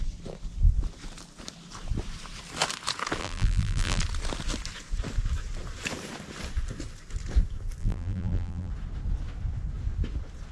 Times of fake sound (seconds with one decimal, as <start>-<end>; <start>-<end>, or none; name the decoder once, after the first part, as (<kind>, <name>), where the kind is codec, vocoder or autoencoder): 3.2-4.0 (vocoder, BigVGAN v2); 7.8-8.7